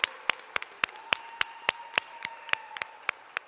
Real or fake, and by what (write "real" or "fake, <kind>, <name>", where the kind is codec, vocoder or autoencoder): fake, vocoder, BigVGAN v2